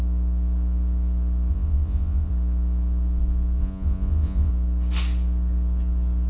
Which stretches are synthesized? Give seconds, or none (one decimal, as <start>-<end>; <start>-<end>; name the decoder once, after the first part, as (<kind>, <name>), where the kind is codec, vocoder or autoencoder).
1.5-2.3 (vocoder, Vocos); 3.6-4.5